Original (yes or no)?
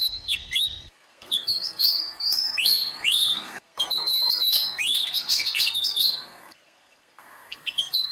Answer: no